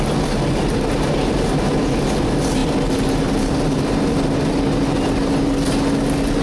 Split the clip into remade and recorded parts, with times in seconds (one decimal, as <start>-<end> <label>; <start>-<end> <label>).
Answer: 0.0-6.4 recorded